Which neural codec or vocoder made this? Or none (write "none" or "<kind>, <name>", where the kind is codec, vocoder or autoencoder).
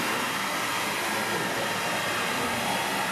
none